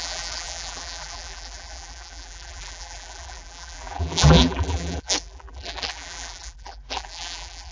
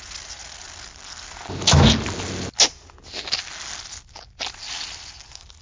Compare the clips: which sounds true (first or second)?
second